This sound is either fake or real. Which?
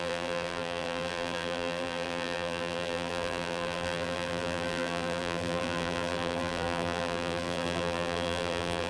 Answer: fake